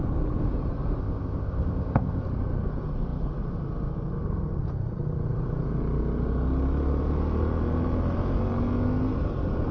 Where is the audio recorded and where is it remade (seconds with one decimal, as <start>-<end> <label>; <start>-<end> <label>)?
0.0-1.0 recorded; 1.0-2.2 remade; 2.2-9.7 recorded